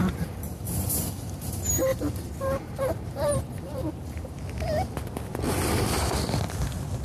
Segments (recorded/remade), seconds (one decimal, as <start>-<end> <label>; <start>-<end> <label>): 0.0-0.6 remade; 0.6-1.9 recorded; 1.9-4.4 remade; 4.4-7.0 recorded

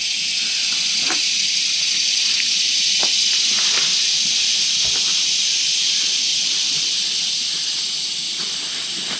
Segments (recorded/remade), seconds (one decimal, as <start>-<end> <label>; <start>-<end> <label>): 0.0-3.9 recorded; 3.9-4.6 remade; 4.6-6.3 recorded; 6.3-6.9 remade; 6.9-9.2 recorded

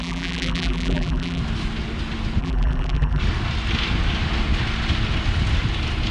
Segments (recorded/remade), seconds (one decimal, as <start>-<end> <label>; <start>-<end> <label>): 0.0-1.4 remade; 1.4-2.4 recorded; 2.4-3.2 remade; 3.2-6.1 recorded

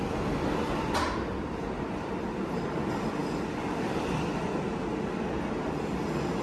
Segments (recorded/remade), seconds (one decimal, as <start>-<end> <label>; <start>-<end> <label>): 0.0-6.4 recorded

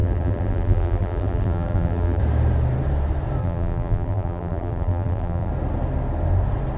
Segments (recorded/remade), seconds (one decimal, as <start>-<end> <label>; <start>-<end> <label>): 0.0-2.2 remade; 2.2-3.4 recorded; 3.4-5.5 remade; 5.5-6.8 recorded

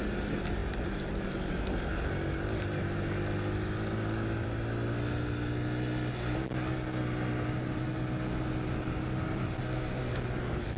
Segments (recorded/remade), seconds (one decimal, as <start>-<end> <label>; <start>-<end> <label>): 0.0-10.8 recorded

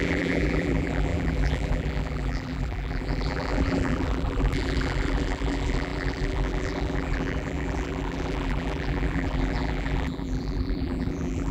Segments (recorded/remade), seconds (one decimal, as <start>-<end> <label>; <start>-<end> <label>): 0.0-11.5 remade